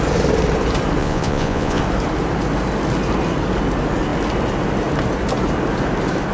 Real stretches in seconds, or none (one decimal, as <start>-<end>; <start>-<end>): 0.0-1.0; 1.8-6.3